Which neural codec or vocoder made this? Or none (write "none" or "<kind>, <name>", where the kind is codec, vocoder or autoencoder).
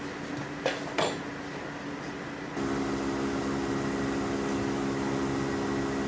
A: none